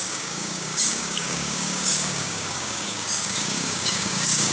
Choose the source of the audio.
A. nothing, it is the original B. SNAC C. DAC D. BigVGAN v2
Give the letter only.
C